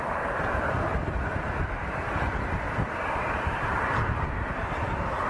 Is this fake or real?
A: real